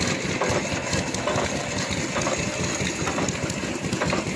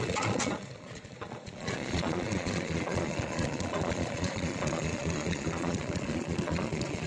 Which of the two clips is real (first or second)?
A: first